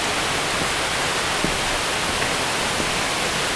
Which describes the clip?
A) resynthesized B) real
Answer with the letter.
B